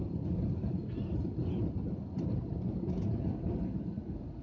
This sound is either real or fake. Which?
real